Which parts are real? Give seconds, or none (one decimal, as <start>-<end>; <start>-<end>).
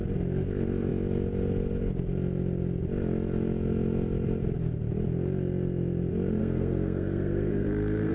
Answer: 0.0-6.4